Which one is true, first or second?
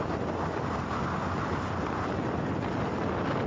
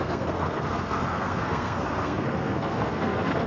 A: first